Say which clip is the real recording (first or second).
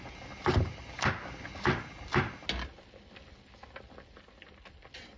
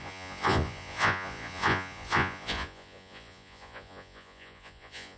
first